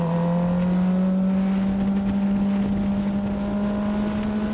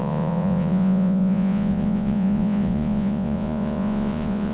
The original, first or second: first